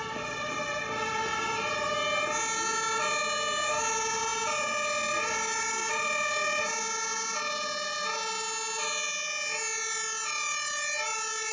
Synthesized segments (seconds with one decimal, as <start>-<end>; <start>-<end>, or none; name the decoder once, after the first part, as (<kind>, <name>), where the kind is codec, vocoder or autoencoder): none